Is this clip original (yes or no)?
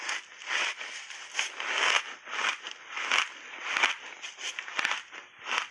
yes